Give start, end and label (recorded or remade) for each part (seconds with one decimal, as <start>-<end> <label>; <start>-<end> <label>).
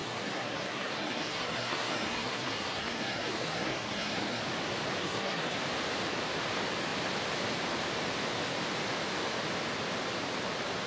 0.0-4.4 remade; 4.4-5.0 recorded; 5.0-5.6 remade; 5.6-10.9 recorded